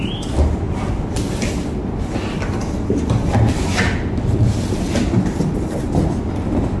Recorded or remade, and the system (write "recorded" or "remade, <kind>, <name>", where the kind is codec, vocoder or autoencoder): recorded